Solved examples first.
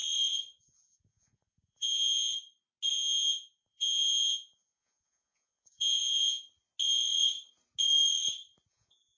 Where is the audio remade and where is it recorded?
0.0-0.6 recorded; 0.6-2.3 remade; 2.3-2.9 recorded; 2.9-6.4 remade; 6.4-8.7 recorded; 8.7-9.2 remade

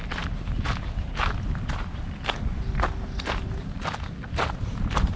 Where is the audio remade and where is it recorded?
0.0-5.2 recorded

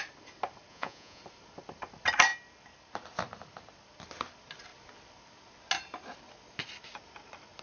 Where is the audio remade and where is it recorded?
0.0-0.7 recorded; 0.7-1.2 remade; 1.2-7.6 recorded

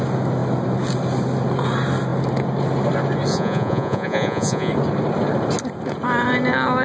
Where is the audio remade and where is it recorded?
0.0-3.3 recorded; 3.3-4.7 remade; 4.7-6.8 recorded